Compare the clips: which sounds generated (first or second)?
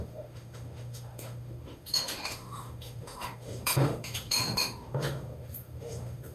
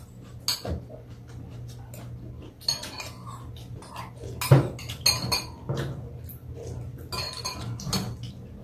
first